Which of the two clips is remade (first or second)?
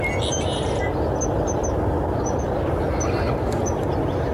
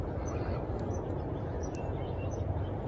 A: second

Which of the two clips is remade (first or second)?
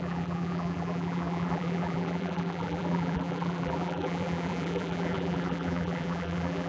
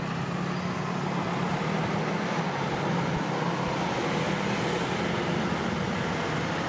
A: first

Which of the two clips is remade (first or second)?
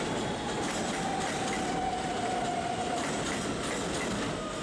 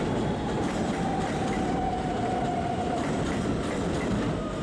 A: second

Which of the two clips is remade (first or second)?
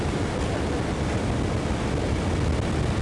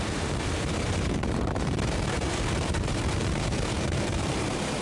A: second